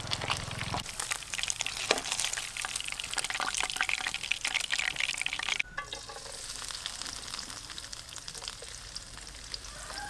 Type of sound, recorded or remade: recorded